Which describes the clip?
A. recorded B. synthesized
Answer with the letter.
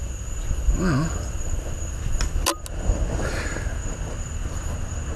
A